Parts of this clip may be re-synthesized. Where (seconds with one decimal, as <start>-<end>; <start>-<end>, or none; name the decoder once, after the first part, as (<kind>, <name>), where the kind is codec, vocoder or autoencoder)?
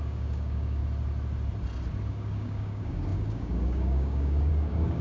0.0-0.8 (codec, DAC); 2.1-5.0